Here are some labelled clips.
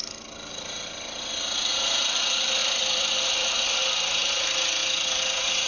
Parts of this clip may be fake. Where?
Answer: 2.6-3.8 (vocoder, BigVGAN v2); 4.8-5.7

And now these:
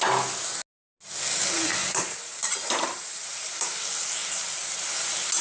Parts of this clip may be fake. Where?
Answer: 1.8-3.5 (vocoder, BigVGAN v2)

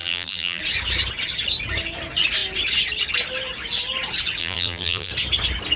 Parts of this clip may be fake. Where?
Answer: 0.0-0.6 (vocoder, BigVGAN v2); 4.4-5.1

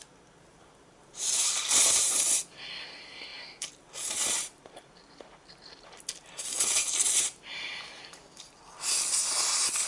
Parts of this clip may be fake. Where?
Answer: 0.5-2.2 (vocoder, BigVGAN v2); 3.3-4.9; 6.8-7.7

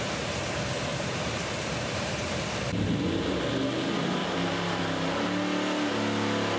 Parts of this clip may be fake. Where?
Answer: 0.9-3.5 (vocoder, BigVGAN v2); 4.2-4.8

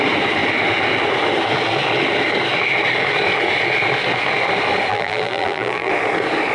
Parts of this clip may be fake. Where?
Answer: 4.9-5.9 (vocoder, BigVGAN v2)